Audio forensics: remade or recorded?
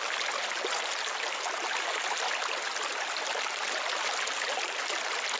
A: recorded